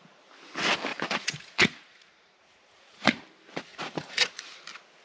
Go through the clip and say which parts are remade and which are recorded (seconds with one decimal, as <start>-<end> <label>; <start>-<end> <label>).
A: 0.0-0.9 recorded; 0.9-3.2 remade; 3.2-3.7 recorded; 3.7-4.5 remade; 4.5-5.0 recorded